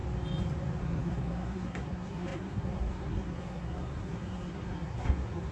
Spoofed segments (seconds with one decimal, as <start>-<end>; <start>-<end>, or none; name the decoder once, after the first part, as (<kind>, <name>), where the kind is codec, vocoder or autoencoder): 0.8-5.5 (codec, SNAC)